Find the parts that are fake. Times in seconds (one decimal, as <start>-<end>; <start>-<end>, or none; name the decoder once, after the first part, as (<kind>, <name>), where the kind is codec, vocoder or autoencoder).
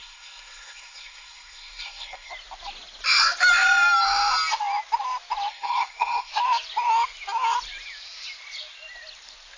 0.0-2.3 (codec, SNAC); 5.5-6.3